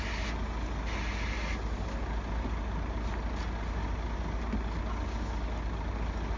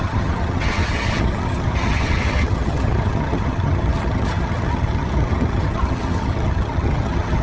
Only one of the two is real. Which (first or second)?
first